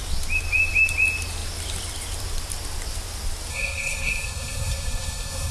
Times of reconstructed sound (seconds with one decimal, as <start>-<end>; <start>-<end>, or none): 3.5-5.5